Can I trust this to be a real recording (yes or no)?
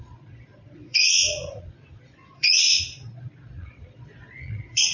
no